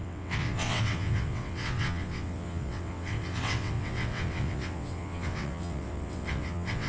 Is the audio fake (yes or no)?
yes